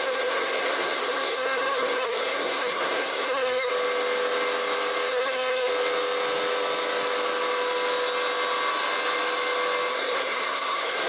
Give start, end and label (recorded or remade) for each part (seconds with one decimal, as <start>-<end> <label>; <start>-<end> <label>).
0.0-3.7 remade; 3.7-5.1 recorded; 5.1-5.7 remade; 5.7-9.9 recorded; 9.9-11.1 remade